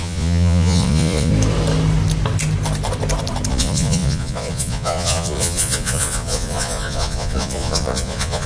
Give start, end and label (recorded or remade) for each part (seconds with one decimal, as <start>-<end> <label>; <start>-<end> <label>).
0.0-1.3 remade; 1.3-3.5 recorded; 3.5-8.5 remade